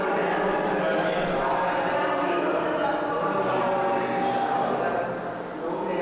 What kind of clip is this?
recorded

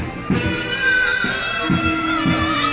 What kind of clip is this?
recorded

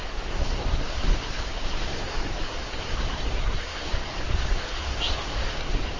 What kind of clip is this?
remade